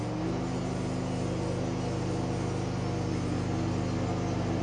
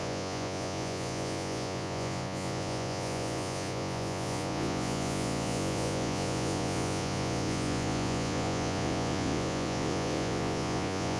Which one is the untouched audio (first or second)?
first